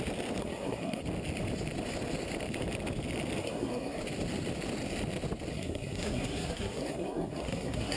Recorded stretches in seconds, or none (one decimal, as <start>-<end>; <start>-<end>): 0.0-0.4; 1.0-3.4; 4.0-5.5

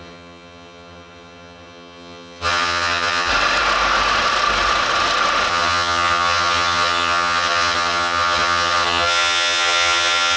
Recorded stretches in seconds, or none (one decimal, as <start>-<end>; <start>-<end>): 3.3-5.5